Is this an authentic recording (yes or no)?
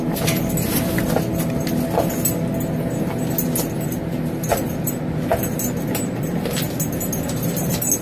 yes